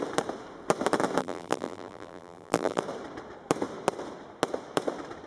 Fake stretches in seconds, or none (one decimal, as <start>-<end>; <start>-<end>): 1.2-2.8